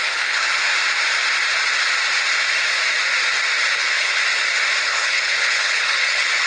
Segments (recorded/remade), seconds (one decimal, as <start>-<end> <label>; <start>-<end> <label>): 0.0-0.7 remade; 0.7-3.8 recorded; 3.8-4.2 remade; 4.2-4.8 recorded; 4.8-6.5 remade